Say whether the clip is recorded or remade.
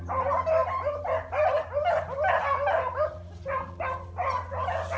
recorded